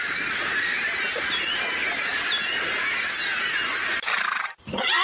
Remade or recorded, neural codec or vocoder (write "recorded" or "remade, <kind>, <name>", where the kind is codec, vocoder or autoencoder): recorded